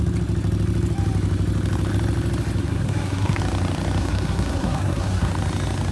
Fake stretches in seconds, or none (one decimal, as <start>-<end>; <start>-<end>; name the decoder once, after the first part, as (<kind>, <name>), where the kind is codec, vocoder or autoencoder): 2.6-3.4 (codec, SNAC); 4.0-5.3